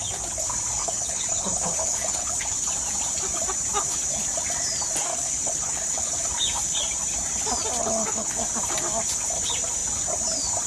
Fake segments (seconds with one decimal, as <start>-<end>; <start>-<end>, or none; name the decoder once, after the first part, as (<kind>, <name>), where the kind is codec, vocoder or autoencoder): 0.8-2.7 (codec, HILCodec); 5.1-6.1; 7.8-8.4